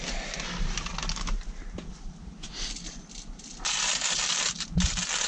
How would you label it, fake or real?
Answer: real